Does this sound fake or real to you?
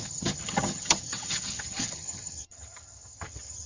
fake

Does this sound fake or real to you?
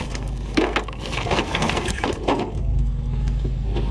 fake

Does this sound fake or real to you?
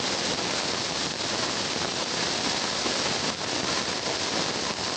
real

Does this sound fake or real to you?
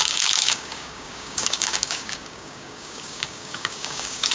fake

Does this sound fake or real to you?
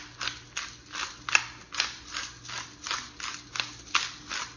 real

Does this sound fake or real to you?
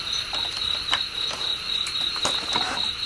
real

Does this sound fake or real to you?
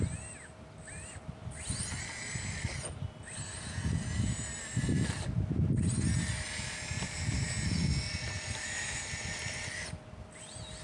real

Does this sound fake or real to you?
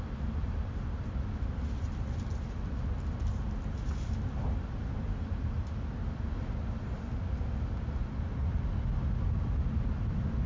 real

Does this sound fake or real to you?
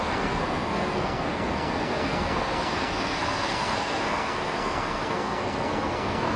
fake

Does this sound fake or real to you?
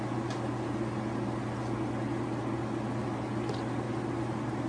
real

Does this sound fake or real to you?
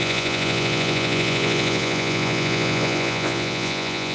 fake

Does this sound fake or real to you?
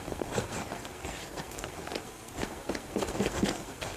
fake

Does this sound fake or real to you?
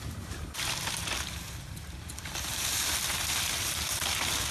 fake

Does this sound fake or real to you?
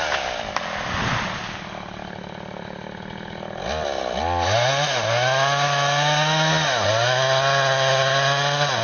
real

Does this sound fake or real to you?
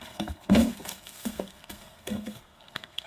fake